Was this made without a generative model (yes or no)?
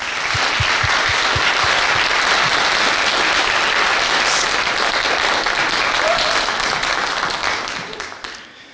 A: yes